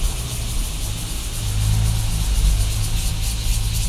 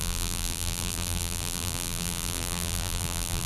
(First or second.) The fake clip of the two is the second